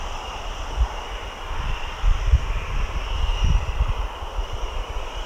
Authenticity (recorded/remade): recorded